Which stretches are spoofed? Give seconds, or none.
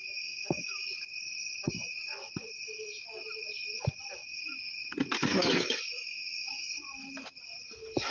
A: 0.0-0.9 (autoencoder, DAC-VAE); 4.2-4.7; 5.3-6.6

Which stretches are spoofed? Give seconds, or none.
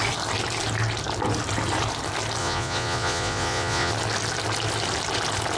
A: 2.4-3.9 (vocoder, Vocos)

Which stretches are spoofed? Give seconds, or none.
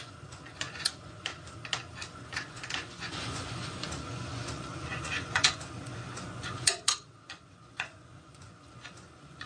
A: 0.0-1.3 (vocoder, Vocos); 2.1-9.5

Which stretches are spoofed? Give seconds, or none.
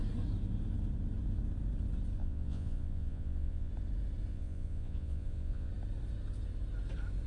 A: 2.2-3.7 (vocoder, Vocos); 4.3-5.7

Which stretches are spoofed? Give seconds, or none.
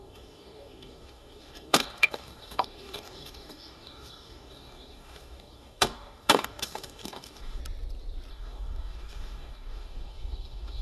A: 0.0-7.6 (codec, DAC); 8.3-10.8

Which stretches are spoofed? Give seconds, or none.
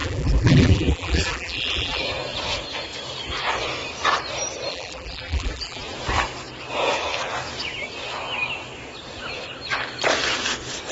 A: 0.0-2.0 (vocoder, BigVGAN v2); 4.7-5.8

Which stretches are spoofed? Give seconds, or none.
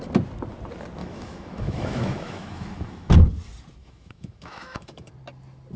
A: 1.0-3.1 (autoencoder, DAC-VAE); 3.8-5.1